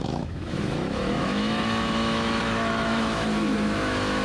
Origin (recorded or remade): remade